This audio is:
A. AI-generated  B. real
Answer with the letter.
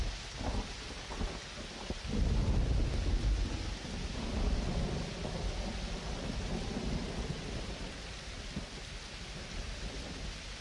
B